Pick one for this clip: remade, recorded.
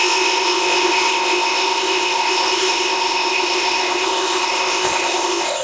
remade